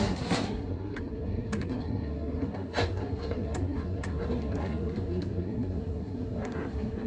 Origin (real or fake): fake